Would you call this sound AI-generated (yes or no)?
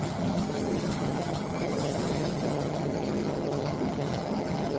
yes